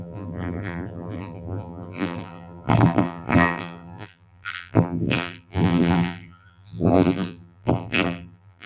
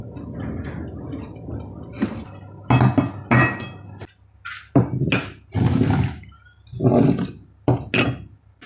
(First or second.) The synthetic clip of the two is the first